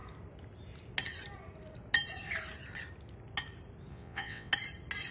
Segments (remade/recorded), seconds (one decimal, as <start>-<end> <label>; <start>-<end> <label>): 0.0-3.9 recorded; 3.9-4.5 remade; 4.5-5.1 recorded